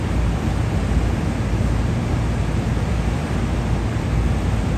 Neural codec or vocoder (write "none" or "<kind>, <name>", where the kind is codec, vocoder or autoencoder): none